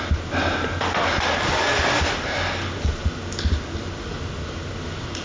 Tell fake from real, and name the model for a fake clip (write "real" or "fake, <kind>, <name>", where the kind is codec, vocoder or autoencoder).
real